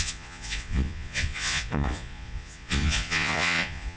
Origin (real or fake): fake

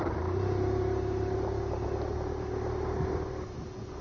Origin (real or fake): real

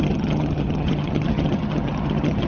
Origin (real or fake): fake